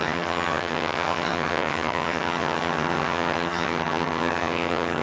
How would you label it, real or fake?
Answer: fake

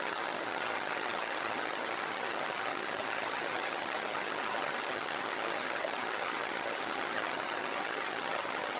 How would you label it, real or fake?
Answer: fake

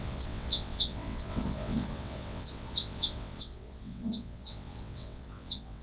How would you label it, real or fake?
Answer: fake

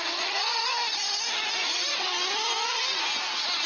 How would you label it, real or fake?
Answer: real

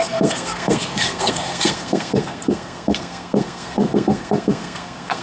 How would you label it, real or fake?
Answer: fake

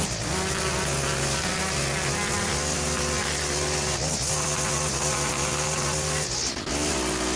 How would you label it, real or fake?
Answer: real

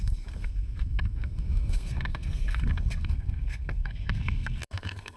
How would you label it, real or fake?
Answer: fake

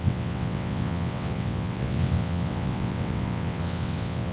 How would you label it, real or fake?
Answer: fake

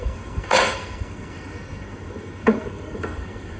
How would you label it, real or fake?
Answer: fake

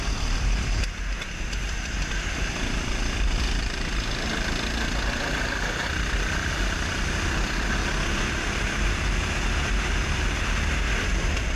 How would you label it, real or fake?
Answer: fake